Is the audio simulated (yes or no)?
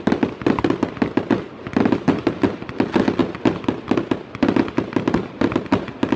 no